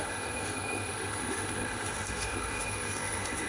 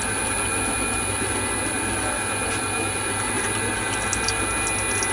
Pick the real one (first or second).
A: second